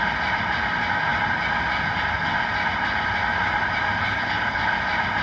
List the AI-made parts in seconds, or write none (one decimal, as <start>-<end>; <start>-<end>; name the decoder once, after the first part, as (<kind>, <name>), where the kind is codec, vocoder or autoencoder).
4.0-4.7 (codec, HILCodec)